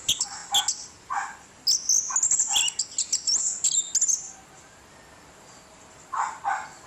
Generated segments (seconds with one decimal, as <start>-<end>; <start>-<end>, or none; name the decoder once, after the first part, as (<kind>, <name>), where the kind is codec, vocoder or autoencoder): none

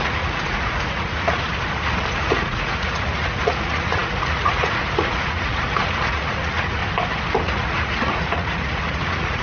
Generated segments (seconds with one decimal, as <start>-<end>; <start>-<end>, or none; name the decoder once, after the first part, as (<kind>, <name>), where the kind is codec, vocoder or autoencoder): 0.0-1.5 (vocoder, Vocos); 2.1-6.8; 7.4-9.4

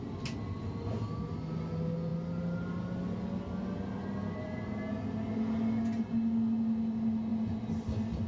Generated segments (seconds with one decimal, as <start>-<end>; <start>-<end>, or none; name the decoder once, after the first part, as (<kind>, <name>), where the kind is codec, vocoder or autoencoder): none

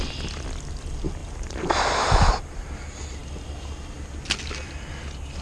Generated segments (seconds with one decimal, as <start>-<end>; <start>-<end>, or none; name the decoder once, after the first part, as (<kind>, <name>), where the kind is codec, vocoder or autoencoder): 1.2-2.5 (vocoder, BigVGAN v2)